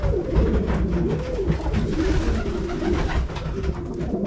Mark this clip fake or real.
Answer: real